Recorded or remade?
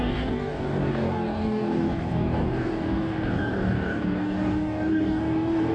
remade